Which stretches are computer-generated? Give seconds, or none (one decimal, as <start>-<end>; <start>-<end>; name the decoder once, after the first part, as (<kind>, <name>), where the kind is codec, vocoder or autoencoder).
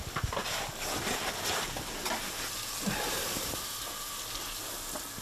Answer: none